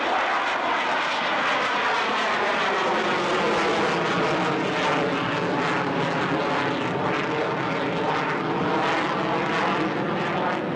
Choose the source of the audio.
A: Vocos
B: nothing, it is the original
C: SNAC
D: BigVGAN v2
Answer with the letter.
B